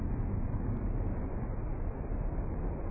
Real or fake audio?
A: real